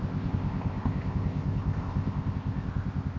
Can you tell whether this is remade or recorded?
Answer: remade